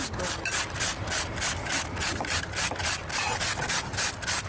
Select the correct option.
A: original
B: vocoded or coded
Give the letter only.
A